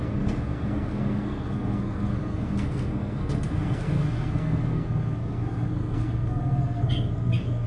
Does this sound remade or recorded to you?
remade